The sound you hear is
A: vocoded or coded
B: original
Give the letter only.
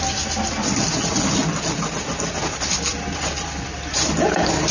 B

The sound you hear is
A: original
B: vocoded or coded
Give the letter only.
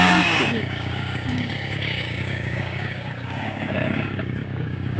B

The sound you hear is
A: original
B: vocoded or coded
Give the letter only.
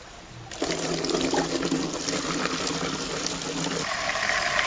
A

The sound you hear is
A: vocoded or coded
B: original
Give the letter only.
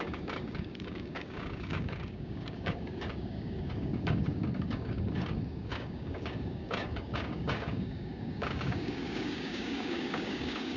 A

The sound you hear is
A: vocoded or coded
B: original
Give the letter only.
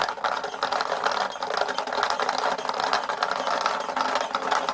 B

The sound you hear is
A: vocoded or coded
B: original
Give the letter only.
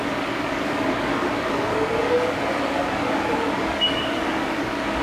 A